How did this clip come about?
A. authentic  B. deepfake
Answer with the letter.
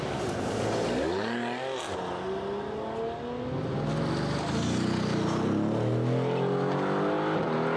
A